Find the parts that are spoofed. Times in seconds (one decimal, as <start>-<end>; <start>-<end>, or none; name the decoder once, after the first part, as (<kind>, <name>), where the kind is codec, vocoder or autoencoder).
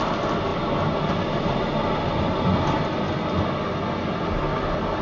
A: none